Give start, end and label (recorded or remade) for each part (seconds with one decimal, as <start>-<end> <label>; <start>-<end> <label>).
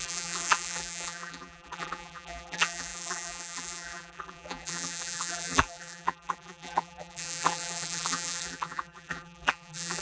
0.0-10.0 remade